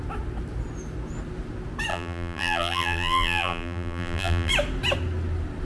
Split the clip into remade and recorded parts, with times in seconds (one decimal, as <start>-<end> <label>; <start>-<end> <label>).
0.0-1.9 recorded; 1.9-4.5 remade; 4.5-5.6 recorded